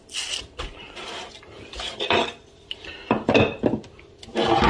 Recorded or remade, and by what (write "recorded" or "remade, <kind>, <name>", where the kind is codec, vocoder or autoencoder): recorded